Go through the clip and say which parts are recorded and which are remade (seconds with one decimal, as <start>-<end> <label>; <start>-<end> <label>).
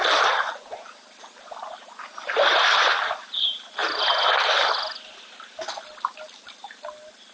0.0-7.3 recorded